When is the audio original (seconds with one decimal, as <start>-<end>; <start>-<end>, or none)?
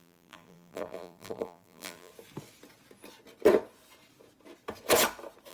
2.1-5.5